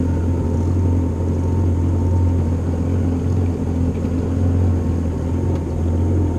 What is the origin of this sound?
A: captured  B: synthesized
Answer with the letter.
A